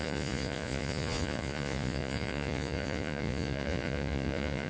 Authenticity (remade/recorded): remade